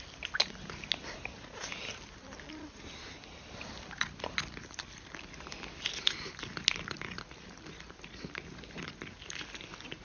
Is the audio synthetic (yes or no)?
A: no